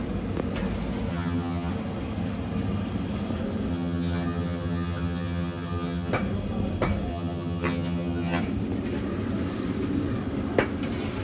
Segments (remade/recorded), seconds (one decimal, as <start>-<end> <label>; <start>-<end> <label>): 0.0-1.1 recorded; 1.1-1.7 remade; 1.7-3.7 recorded; 3.7-6.1 remade; 6.1-7.1 recorded; 7.1-8.4 remade; 8.4-11.2 recorded